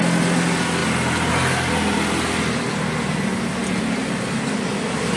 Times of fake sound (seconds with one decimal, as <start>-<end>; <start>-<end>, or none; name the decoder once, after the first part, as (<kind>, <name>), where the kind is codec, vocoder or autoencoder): none